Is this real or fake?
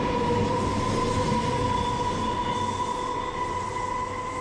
real